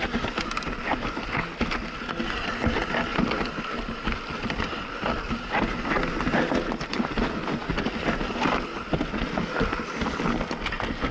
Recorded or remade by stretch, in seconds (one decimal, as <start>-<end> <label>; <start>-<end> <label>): 0.0-11.1 recorded